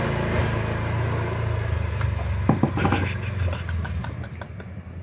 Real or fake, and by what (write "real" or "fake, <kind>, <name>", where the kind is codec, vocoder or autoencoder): real